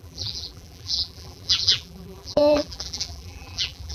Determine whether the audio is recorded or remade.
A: remade